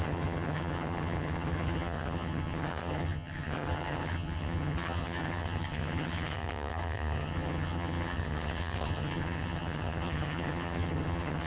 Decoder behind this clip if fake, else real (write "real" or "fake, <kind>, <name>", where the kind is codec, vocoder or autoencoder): fake, vocoder, HiFi-GAN